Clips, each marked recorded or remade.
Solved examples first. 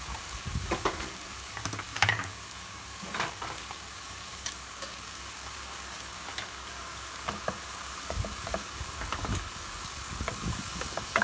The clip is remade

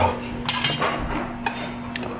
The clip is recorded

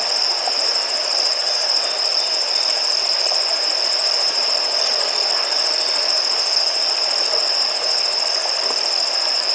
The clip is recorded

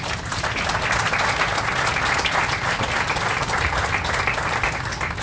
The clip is recorded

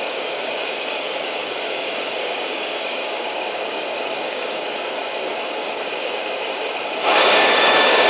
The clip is remade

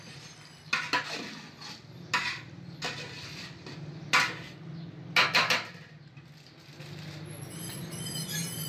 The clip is recorded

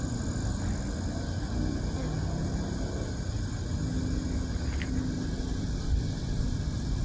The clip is recorded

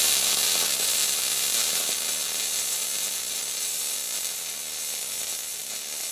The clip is recorded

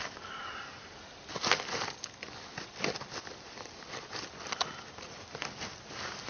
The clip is recorded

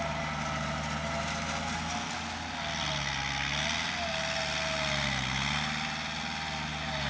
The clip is recorded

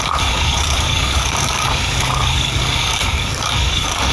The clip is remade